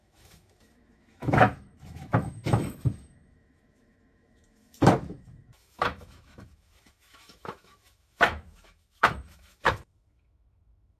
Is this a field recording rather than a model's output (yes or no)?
no